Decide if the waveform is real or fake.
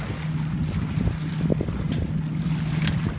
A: real